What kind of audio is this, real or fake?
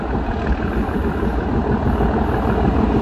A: real